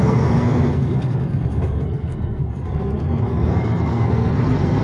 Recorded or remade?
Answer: remade